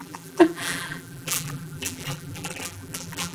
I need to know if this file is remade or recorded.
remade